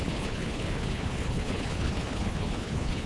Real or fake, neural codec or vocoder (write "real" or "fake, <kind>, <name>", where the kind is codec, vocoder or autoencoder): fake, codec, HILCodec